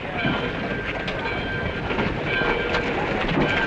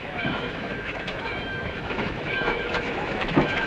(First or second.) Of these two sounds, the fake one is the second